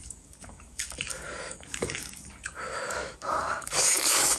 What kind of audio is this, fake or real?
fake